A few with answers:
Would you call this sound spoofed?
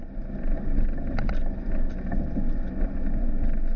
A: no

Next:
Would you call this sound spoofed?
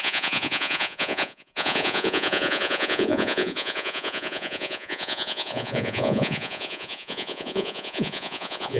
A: yes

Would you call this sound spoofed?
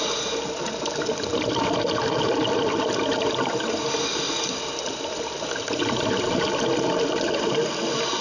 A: no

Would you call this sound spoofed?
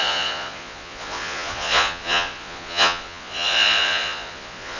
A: yes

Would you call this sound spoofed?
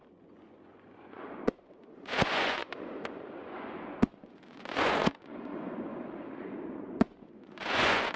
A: yes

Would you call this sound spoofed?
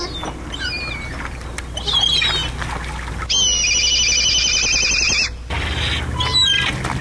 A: no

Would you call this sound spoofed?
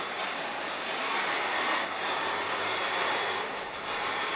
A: no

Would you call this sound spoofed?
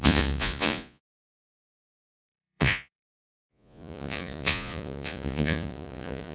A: yes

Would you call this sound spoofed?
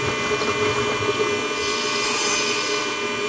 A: no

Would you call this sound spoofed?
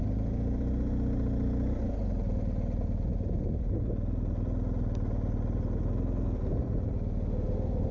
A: no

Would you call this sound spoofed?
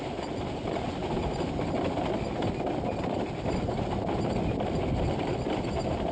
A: no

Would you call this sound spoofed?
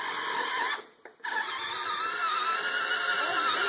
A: no